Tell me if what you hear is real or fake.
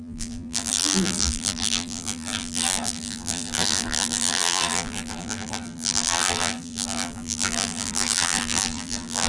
fake